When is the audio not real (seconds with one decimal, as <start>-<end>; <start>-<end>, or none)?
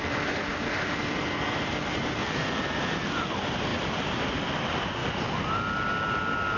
3.7-4.4